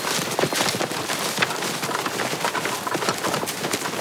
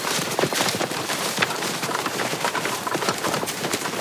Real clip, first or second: first